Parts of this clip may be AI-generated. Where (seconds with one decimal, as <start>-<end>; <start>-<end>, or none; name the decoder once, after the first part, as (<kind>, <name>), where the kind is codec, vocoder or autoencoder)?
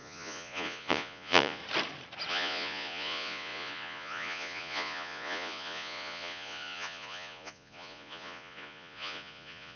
0.0-1.6 (vocoder, Vocos); 2.3-9.8